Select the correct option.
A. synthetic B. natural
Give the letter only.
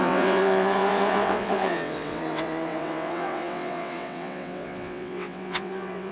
A